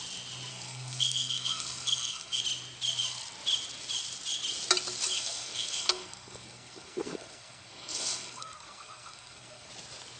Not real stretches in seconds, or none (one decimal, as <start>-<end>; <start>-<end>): 0.5-2.4; 5.1-9.7